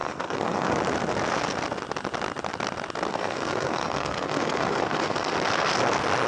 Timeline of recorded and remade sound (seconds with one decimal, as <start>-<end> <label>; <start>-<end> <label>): 0.0-0.7 remade; 0.7-3.1 recorded; 3.1-5.3 remade; 5.3-6.3 recorded